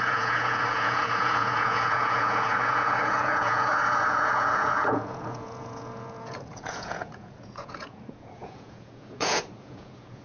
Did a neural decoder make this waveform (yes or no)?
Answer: yes